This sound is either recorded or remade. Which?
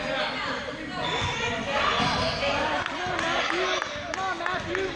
recorded